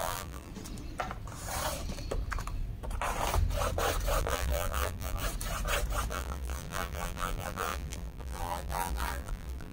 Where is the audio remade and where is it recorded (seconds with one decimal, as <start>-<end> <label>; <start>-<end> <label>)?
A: 0.0-0.5 remade; 0.5-4.2 recorded; 4.2-5.2 remade; 5.2-6.1 recorded; 6.1-9.7 remade